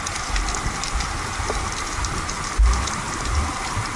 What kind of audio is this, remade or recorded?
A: recorded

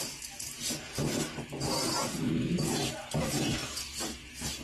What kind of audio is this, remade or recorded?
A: recorded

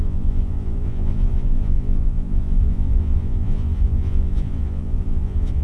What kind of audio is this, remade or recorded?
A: remade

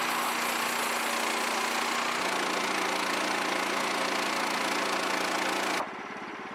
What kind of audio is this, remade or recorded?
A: recorded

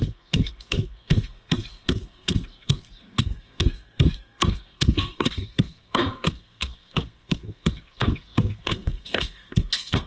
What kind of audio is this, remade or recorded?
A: remade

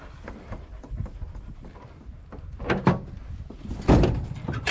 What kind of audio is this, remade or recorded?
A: recorded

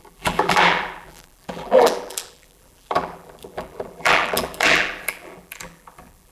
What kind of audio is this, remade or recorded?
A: remade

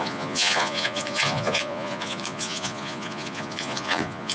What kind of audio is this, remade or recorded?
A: remade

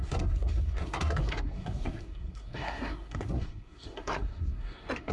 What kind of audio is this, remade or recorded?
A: remade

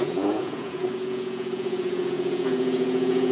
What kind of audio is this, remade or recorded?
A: remade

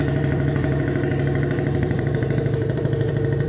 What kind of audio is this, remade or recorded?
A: remade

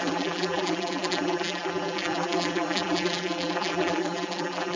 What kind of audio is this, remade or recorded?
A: remade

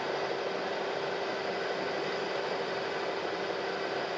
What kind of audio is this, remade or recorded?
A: recorded